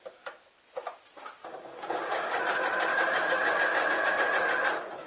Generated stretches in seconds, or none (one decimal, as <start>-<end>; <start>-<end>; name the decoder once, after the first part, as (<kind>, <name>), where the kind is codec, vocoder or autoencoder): 1.4-2.4 (codec, DAC); 2.9-4.1